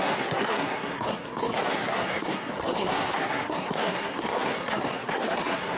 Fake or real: fake